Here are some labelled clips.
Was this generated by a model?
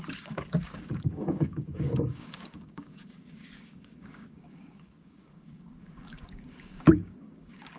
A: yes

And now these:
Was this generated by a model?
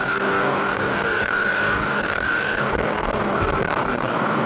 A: yes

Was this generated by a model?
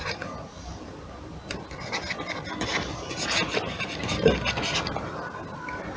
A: no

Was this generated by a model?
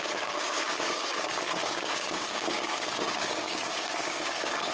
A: yes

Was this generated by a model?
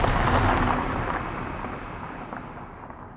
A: no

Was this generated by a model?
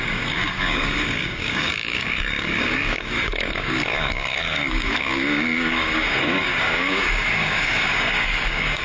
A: yes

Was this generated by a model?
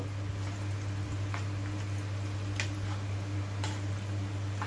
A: no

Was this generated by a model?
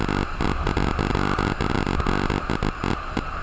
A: no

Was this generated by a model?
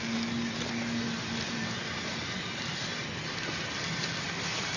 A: no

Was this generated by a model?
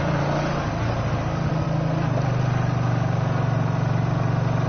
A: no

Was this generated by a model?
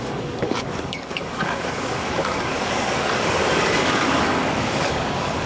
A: yes